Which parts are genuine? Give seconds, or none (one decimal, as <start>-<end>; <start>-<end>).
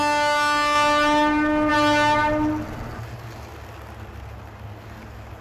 0.0-5.4